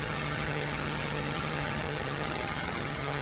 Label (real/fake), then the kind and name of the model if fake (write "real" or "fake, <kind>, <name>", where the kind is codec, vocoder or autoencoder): fake, vocoder, HiFi-GAN